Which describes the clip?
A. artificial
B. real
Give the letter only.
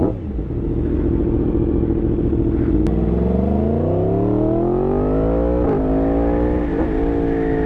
B